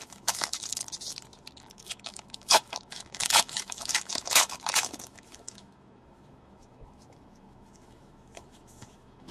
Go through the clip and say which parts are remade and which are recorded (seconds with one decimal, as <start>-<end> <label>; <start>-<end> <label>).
0.0-0.8 remade; 0.8-1.6 recorded; 1.6-9.3 remade